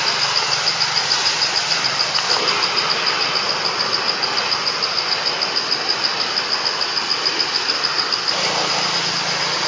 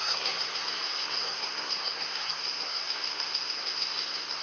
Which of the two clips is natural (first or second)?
first